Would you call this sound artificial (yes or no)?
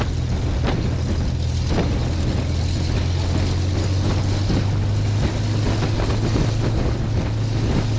no